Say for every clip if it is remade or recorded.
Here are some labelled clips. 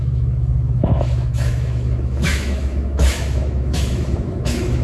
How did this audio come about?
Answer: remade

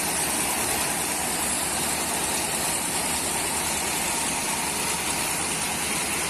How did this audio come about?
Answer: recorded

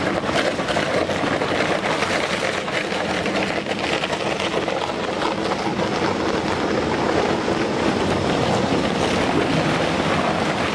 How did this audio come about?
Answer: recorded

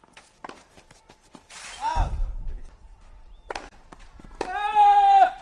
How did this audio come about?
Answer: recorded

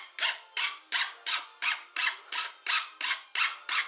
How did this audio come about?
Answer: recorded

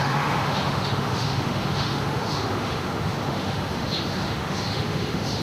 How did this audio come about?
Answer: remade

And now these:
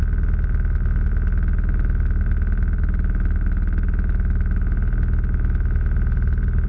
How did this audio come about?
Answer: recorded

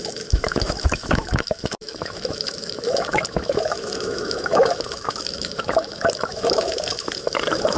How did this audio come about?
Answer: remade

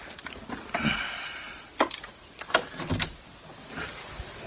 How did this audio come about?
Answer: recorded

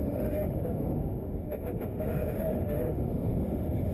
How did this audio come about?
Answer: remade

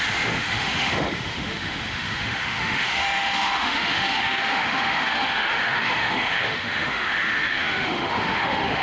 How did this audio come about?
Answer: remade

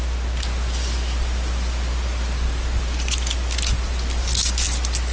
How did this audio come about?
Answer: recorded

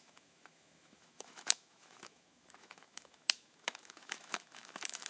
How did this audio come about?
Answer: remade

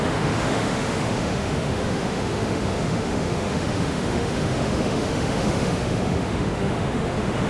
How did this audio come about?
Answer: remade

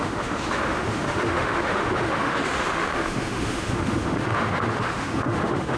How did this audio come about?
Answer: remade